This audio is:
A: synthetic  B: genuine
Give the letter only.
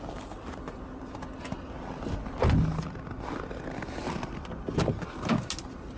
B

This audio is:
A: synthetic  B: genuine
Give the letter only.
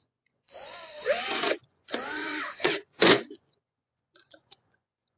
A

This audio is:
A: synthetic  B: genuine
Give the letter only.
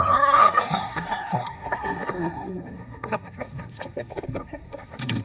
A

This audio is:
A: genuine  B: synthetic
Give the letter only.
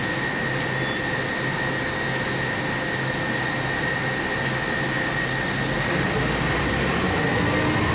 A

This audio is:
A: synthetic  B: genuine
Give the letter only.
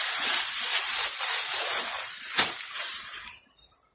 A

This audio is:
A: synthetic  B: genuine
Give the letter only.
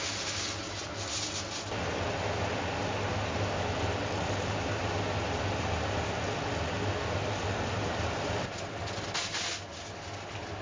B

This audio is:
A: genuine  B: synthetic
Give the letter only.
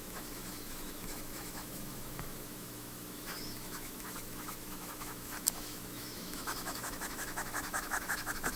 B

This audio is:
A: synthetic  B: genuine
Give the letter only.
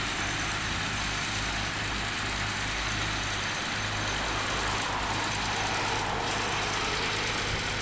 B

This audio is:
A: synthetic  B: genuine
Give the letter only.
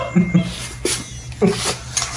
B